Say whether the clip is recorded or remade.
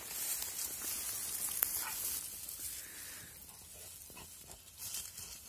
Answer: recorded